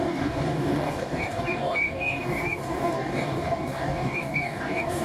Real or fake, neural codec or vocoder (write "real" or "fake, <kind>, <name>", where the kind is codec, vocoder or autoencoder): fake, codec, DAC